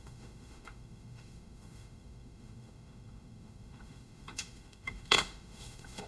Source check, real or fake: fake